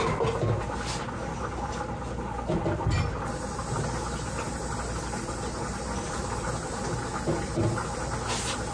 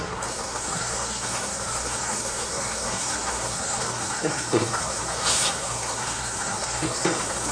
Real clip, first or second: first